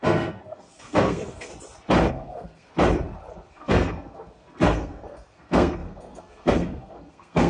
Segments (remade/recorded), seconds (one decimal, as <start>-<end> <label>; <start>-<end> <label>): 0.0-1.5 remade; 1.5-2.1 recorded; 2.1-2.7 remade; 2.7-3.5 recorded; 3.5-7.5 remade